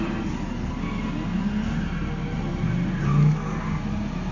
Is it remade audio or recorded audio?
recorded